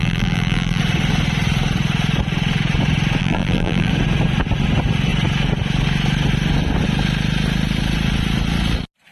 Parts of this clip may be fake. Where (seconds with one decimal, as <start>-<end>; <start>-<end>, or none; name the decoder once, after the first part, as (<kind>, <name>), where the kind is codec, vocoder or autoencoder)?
0.0-0.8 (vocoder, BigVGAN v2); 3.2-3.9